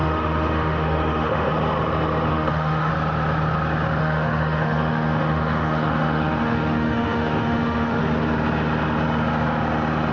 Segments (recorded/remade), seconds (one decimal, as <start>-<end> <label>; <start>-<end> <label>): 0.0-1.5 remade; 1.5-2.3 recorded; 2.3-2.9 remade; 2.9-4.0 recorded; 4.0-8.0 remade; 8.0-10.1 recorded